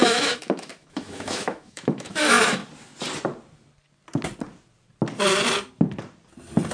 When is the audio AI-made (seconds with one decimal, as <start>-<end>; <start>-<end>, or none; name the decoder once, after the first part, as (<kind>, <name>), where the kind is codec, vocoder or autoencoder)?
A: 0.0-2.6 (autoencoder, DAC-VAE)